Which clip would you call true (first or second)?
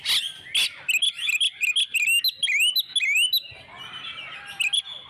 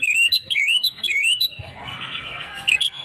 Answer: first